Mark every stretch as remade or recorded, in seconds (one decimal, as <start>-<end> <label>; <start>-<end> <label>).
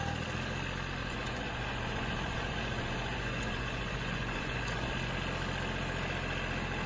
0.0-1.0 recorded; 1.0-5.1 remade; 5.1-6.9 recorded